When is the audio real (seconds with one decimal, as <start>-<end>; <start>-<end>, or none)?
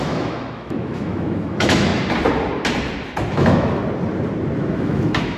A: 1.9-3.3; 3.8-4.6